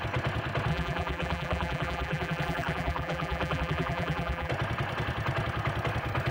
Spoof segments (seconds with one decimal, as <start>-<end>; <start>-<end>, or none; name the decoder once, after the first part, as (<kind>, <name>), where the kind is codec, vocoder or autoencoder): 0.7-4.5 (vocoder, BigVGAN v2)